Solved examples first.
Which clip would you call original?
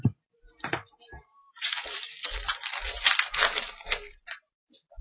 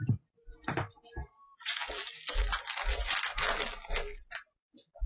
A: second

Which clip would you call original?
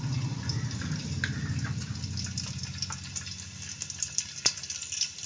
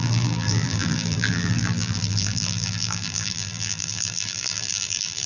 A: first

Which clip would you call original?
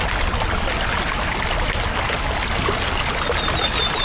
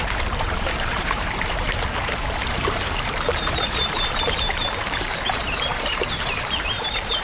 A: first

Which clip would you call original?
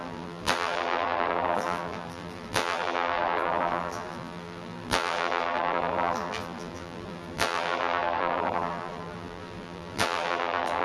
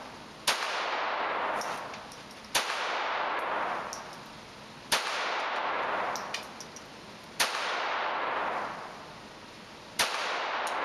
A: second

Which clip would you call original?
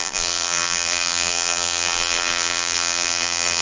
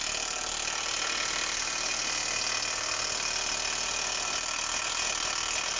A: second